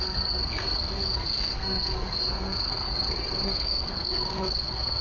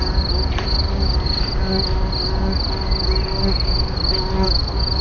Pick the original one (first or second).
second